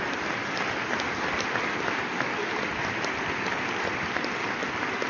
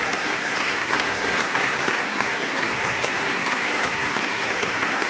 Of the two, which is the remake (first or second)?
second